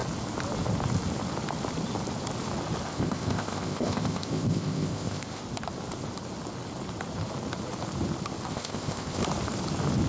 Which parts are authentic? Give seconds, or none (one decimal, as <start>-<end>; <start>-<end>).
0.0-2.9; 5.4-8.5; 9.2-10.1